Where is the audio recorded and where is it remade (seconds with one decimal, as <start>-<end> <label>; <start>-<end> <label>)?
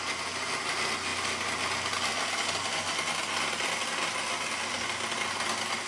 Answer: 0.0-5.9 recorded